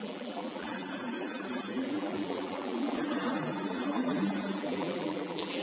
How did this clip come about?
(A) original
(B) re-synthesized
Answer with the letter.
B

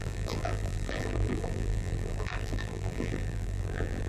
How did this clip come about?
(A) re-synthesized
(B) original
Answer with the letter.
A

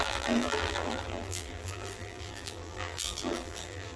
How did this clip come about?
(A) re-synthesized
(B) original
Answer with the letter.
A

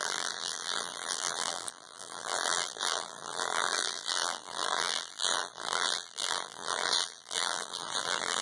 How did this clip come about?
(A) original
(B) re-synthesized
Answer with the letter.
B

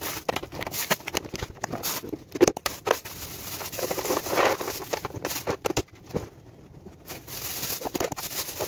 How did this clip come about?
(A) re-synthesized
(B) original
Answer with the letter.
A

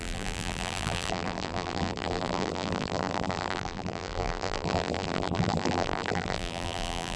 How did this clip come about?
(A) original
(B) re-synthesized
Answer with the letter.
B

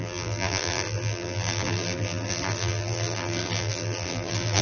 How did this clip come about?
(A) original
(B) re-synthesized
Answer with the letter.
B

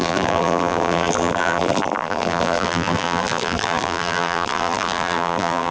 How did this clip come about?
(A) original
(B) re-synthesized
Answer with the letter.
B